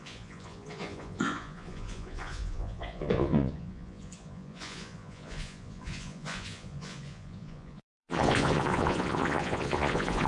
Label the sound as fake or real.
fake